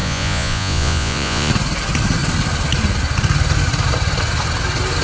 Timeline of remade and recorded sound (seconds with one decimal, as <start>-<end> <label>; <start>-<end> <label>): 0.0-1.5 remade; 1.5-5.0 recorded